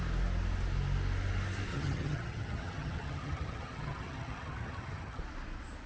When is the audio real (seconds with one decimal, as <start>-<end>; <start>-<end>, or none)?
0.0-1.7; 5.2-5.9